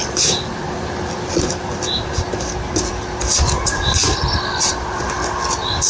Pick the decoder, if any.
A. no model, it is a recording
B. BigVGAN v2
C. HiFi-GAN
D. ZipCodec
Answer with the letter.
B